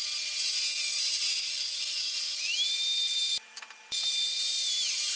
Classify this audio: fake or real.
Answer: real